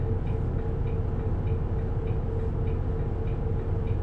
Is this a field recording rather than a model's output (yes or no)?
yes